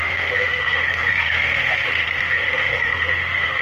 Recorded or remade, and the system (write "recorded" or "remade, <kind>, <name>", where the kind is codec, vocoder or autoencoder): remade, autoencoder, DAC-VAE